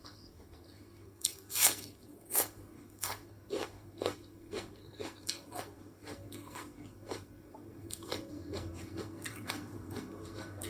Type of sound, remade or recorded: remade